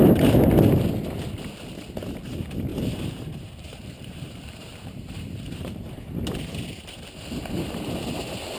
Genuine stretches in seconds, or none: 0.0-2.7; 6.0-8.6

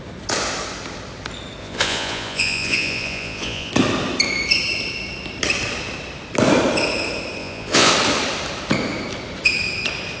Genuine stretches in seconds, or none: 0.0-1.6; 3.7-7.4; 7.9-10.2

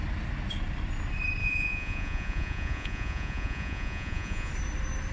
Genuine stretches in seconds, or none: 0.0-1.4; 4.5-5.1

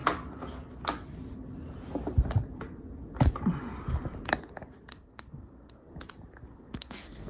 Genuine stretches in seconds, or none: 0.0-4.9; 5.9-6.5

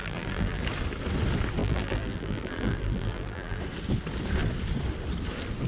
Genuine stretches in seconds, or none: 0.6-1.6; 3.6-5.7